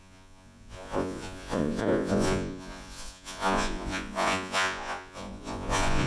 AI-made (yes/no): yes